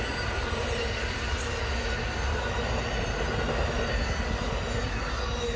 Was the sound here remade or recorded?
recorded